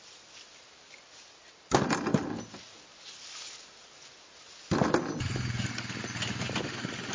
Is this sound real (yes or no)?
yes